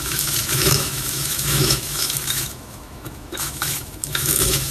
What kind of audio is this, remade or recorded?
remade